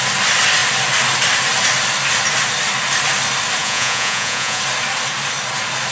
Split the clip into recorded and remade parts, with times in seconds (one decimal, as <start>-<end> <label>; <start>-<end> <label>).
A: 0.0-3.6 recorded; 3.6-4.6 remade; 4.6-5.9 recorded